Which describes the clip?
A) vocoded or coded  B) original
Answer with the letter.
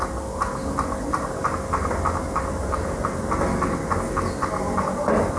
B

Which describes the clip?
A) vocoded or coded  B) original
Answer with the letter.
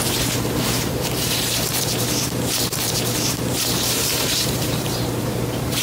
A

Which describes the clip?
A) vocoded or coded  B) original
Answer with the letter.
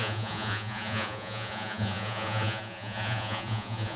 A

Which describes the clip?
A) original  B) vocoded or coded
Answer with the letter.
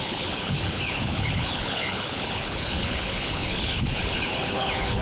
B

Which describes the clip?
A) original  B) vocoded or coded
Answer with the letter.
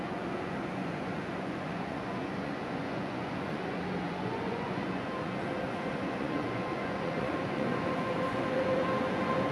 B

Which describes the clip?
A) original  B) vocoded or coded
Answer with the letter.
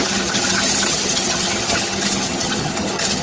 B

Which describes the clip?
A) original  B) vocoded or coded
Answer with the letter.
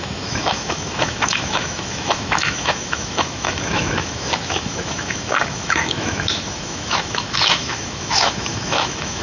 B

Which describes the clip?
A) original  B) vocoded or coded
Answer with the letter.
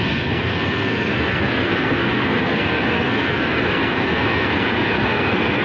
B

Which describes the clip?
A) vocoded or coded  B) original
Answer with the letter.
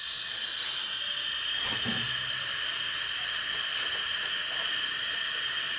B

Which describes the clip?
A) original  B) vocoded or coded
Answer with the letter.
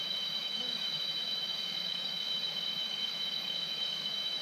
B